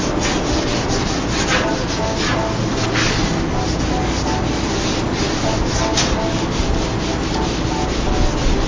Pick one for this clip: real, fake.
real